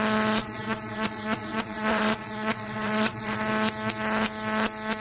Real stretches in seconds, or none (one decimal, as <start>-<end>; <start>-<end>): 0.0-0.4; 3.4-5.0